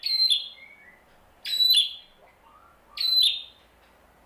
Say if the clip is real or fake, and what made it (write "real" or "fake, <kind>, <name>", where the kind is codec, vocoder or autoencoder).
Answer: real